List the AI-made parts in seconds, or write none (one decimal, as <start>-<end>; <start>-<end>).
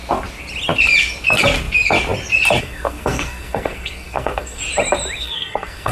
2.6-4.6; 5.2-5.9